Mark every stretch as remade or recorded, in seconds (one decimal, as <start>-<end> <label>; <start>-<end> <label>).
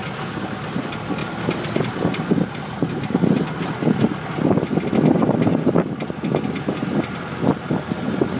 0.0-8.4 recorded